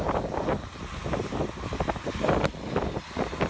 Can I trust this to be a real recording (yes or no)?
yes